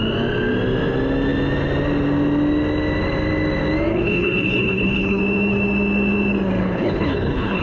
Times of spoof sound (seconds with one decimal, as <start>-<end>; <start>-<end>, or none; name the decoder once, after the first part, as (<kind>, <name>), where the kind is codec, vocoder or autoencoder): 3.9-5.2 (codec, HILCodec); 6.6-7.6